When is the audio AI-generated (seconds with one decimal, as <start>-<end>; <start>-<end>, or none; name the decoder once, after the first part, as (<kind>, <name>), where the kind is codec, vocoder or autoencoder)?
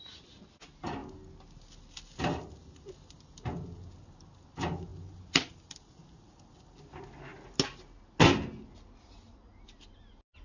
4.9-5.6 (vocoder, BigVGAN v2)